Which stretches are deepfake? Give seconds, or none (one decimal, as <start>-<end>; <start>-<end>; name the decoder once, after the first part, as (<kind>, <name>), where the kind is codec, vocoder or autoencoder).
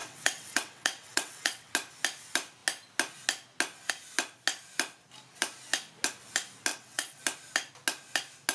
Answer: 0.0-1.7 (vocoder, WaveNeXt); 6.7-7.2